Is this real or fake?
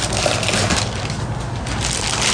real